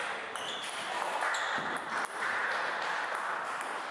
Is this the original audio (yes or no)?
yes